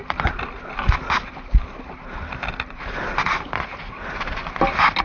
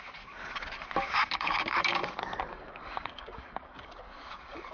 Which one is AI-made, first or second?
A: second